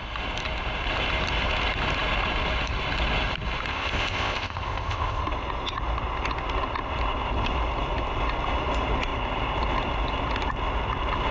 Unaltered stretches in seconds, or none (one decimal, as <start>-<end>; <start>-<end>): 0.0-3.7; 5.2-11.3